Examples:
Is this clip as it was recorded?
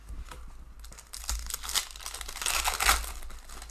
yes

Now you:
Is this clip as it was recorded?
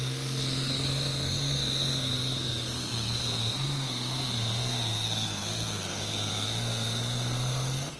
no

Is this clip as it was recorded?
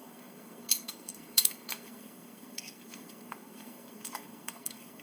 no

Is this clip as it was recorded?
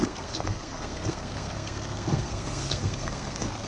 no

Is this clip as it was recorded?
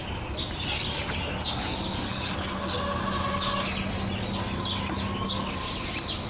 yes